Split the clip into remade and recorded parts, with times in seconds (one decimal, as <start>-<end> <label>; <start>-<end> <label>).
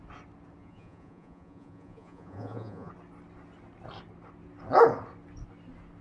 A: 0.0-0.6 recorded; 0.6-2.9 remade; 2.9-6.0 recorded